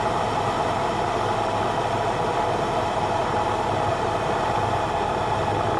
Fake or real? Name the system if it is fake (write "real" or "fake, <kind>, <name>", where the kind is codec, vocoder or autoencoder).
real